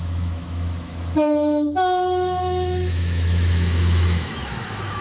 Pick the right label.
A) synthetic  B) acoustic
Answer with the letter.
A